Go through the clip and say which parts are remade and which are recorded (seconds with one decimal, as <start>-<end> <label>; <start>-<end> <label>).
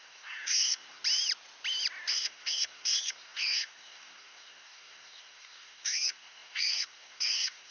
0.0-1.0 remade; 1.0-2.1 recorded; 2.1-7.7 remade